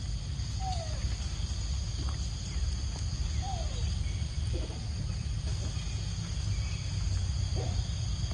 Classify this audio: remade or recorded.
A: recorded